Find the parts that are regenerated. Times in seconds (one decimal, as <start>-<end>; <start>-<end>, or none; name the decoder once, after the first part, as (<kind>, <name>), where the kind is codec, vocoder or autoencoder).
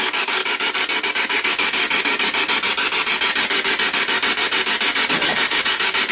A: 0.0-0.4 (codec, DAC); 1.1-1.8; 5.1-6.1